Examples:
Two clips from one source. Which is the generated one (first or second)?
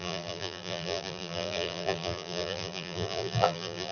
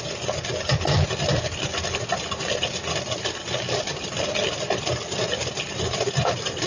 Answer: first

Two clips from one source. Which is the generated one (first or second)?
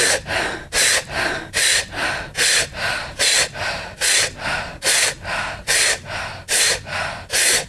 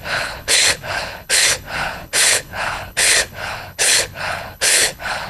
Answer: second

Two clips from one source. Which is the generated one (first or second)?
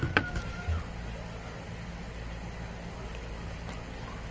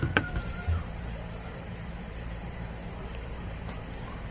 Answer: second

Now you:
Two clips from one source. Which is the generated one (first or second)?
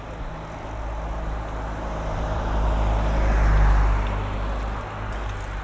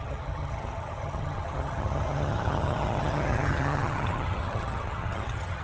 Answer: second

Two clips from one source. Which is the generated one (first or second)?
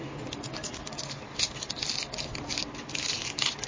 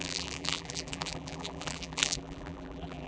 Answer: second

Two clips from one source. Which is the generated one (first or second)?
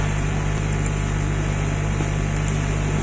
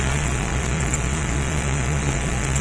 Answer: second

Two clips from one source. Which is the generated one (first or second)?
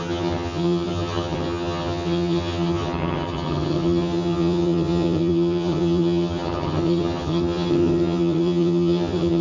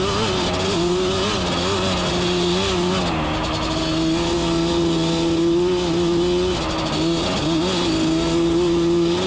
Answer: first